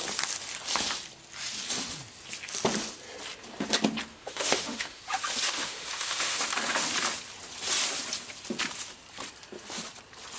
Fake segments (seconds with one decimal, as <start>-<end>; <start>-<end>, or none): 4.1-5.0; 5.6-6.4